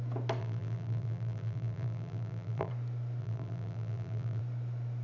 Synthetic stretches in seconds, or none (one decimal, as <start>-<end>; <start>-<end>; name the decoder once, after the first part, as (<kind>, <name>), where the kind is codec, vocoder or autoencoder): 0.4-2.7 (vocoder, BigVGAN v2); 3.2-4.4